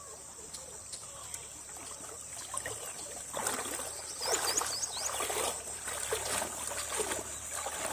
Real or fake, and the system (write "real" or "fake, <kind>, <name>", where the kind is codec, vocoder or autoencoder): real